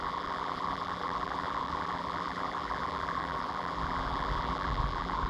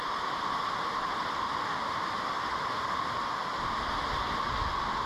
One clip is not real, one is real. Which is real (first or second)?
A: second